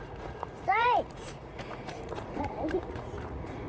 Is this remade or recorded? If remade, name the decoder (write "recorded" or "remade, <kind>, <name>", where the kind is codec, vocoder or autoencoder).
remade, vocoder, Vocos